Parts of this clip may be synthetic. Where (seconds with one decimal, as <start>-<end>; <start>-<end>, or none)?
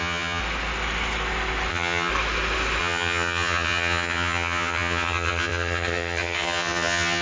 0.0-0.4; 1.7-2.1; 2.8-7.2